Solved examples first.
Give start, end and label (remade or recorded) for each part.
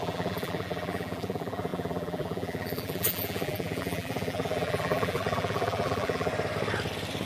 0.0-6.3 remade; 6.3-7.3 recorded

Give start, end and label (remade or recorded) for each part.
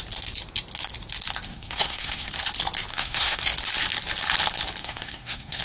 0.0-1.5 recorded; 1.5-2.3 remade; 2.3-2.9 recorded; 2.9-3.4 remade; 3.4-4.8 recorded; 4.8-5.6 remade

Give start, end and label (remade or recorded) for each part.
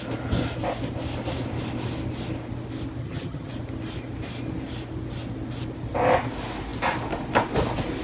0.0-3.0 recorded; 3.0-3.5 remade; 3.5-8.0 recorded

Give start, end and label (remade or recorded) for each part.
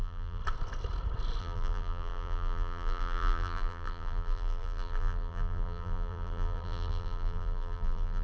0.0-0.4 remade; 0.4-1.4 recorded; 1.4-8.2 remade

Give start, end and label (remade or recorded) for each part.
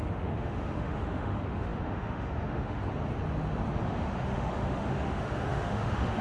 0.0-2.8 remade; 2.8-3.8 recorded; 3.8-6.2 remade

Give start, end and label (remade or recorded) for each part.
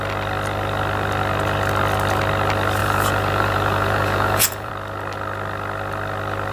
0.0-2.8 recorded; 2.8-4.7 remade; 4.7-6.5 recorded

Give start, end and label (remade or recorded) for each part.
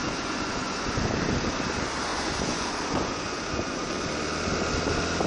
0.0-0.9 remade; 0.9-2.1 recorded; 2.1-4.1 remade; 4.1-5.3 recorded